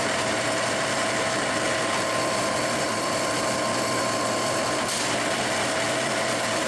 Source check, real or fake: fake